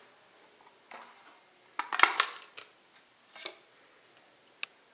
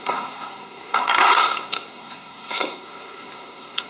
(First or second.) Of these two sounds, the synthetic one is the second